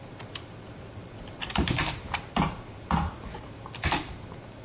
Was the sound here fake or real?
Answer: real